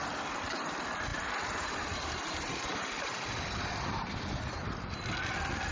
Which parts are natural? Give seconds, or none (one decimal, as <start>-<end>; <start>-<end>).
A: 0.0-1.1; 4.5-5.7